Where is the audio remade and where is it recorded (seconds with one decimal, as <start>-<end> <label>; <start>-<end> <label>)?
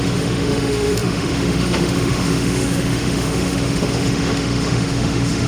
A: 0.0-5.5 remade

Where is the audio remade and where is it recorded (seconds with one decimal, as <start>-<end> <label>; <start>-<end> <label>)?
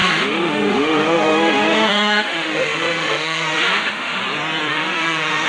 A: 0.0-4.2 remade; 4.2-4.7 recorded; 4.7-5.5 remade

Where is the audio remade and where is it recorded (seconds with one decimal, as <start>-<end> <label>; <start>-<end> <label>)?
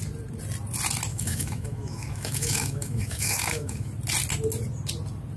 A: 0.0-1.1 recorded; 1.1-3.9 remade; 3.9-5.4 recorded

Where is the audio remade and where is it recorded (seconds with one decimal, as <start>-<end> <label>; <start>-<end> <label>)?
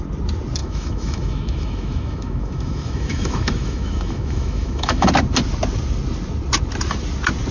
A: 0.0-0.6 recorded; 0.6-5.1 remade; 5.1-7.5 recorded